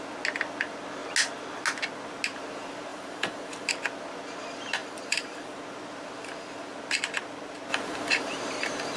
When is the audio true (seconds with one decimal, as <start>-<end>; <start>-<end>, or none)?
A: 0.0-2.9; 3.7-4.8; 5.6-7.7